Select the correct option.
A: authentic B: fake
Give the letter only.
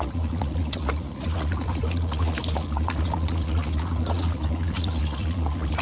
B